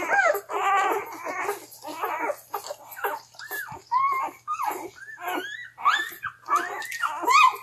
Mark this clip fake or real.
real